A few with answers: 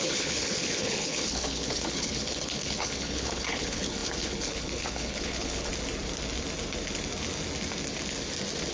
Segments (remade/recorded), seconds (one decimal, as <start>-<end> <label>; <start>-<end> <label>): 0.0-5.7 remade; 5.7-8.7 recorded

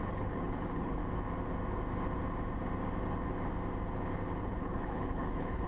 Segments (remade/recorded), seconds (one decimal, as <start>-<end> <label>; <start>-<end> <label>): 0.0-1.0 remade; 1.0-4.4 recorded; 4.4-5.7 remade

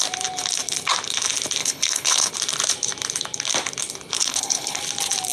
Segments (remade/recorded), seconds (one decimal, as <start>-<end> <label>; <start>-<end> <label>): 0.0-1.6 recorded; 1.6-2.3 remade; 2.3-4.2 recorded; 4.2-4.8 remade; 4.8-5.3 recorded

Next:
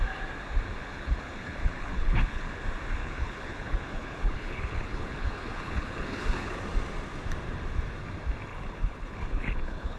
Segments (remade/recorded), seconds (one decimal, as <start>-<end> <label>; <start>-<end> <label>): 0.0-0.8 recorded; 0.8-2.6 remade; 2.6-3.0 recorded; 3.0-6.6 remade; 6.6-8.5 recorded; 8.5-10.0 remade

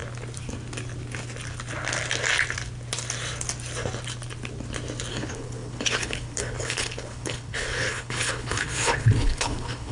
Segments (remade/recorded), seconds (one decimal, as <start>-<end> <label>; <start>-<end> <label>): 0.0-5.1 recorded; 5.1-9.9 remade